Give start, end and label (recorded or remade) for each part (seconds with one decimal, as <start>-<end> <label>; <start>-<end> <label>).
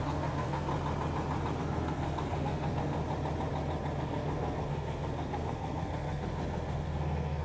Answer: 0.0-0.7 remade; 0.7-1.6 recorded; 1.6-3.0 remade; 3.0-4.0 recorded; 4.0-7.4 remade